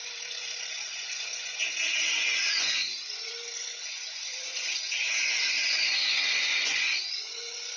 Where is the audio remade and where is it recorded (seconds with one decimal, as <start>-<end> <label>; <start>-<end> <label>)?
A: 0.0-7.8 remade